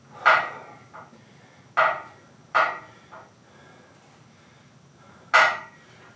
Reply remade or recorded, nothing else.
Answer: recorded